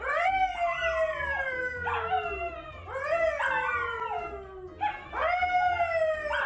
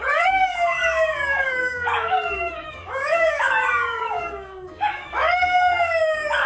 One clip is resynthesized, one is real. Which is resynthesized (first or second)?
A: second